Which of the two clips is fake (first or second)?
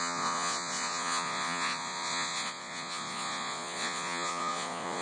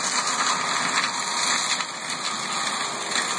first